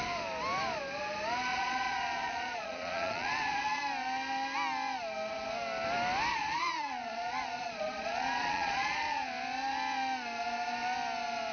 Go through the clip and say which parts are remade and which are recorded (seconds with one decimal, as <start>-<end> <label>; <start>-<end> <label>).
0.0-1.5 recorded; 1.5-3.8 remade; 3.8-6.3 recorded; 6.3-9.3 remade; 9.3-11.5 recorded